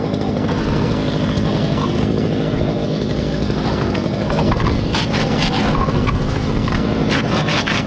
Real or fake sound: fake